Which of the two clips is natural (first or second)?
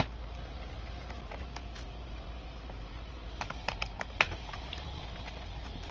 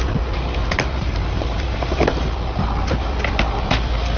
first